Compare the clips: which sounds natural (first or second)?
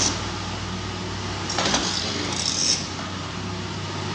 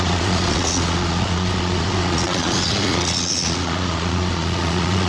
first